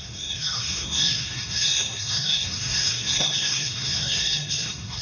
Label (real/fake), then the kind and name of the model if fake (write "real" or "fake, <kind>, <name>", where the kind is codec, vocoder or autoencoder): fake, codec, SNAC